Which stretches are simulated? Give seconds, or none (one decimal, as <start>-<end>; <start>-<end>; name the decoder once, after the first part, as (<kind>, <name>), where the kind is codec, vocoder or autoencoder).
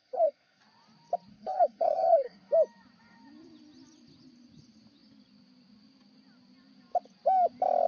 0.0-0.6 (codec, SNAC); 1.3-2.5